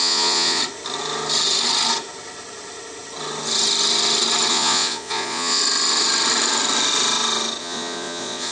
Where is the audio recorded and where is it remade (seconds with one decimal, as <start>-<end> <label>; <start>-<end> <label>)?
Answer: 0.0-0.6 remade; 0.6-4.5 recorded; 4.5-5.6 remade; 5.6-7.6 recorded; 7.6-8.5 remade